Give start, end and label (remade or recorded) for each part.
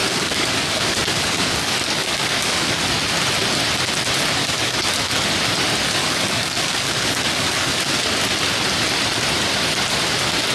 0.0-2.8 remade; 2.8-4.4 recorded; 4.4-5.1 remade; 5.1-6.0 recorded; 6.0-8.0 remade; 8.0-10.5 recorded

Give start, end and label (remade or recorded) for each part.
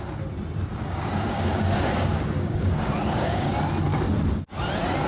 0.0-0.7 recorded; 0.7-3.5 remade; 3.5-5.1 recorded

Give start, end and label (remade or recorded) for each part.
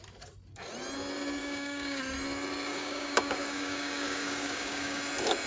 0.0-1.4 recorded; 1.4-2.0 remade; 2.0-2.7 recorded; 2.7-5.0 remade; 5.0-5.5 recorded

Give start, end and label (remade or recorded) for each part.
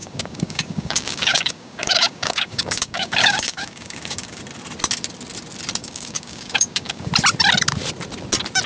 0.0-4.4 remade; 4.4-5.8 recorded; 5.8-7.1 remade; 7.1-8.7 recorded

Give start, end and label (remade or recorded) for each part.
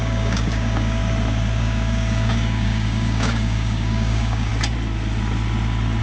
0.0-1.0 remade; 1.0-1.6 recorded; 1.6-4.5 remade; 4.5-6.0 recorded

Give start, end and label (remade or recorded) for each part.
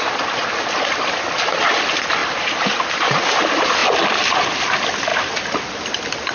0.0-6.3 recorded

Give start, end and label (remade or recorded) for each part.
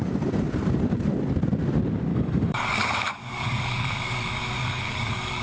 0.0-2.1 recorded; 2.1-5.4 remade